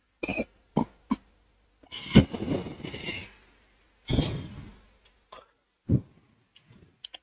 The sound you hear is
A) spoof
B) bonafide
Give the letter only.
B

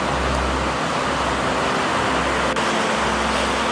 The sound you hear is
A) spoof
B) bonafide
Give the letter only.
B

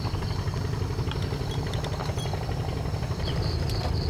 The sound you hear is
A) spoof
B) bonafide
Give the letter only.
B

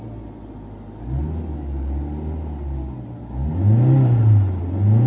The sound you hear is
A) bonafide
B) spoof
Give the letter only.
A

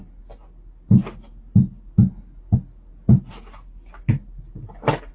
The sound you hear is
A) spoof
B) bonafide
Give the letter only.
B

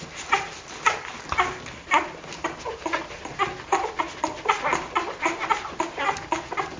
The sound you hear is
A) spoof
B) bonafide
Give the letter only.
B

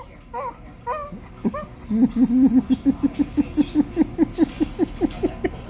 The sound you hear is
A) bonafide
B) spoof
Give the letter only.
A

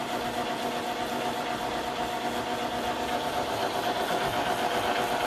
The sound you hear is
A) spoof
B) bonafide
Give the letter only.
B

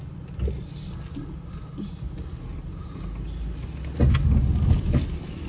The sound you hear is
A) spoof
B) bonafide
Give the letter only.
B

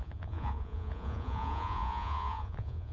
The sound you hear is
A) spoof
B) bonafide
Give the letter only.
A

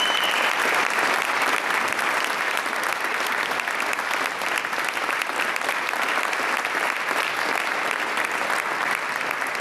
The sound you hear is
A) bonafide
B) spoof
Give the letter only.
A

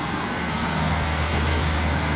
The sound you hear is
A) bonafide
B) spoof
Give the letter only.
B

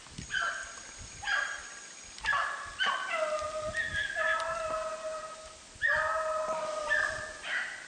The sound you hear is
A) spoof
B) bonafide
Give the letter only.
B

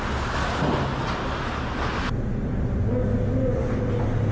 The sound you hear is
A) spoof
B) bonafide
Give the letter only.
B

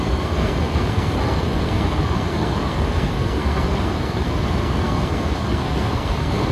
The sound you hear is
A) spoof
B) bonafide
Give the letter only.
A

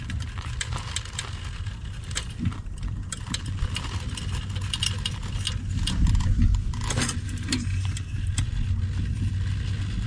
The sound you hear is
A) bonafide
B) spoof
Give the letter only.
A